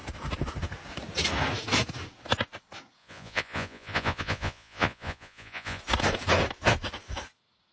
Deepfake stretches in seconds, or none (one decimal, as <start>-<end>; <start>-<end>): 3.0-5.8